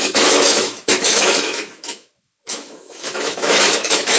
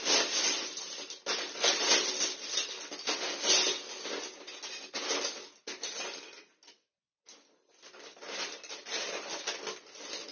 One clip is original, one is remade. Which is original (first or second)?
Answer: second